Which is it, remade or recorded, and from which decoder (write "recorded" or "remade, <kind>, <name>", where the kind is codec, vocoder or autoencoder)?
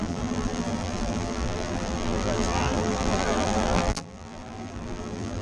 remade, vocoder, BigVGAN v2